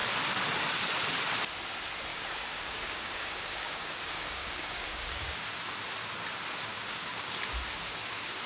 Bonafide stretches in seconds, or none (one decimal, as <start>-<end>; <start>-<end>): 0.0-2.1; 5.4-6.7; 7.3-8.5